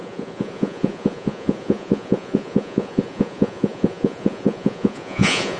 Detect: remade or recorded remade